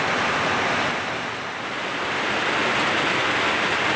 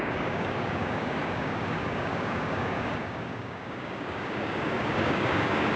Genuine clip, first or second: first